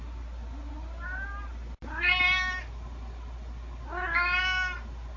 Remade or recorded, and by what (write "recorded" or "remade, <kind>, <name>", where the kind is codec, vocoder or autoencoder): recorded